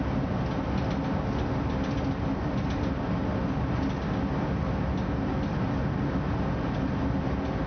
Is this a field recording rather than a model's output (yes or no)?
yes